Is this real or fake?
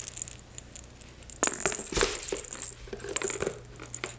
real